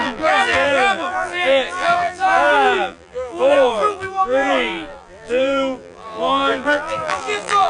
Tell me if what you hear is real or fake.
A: fake